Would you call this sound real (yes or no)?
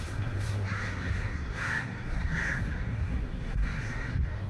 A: no